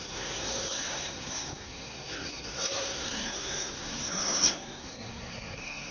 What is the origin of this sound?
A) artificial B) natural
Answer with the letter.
A